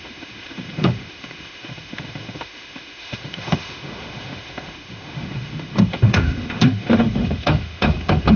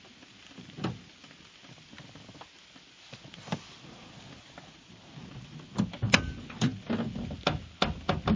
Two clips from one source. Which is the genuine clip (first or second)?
second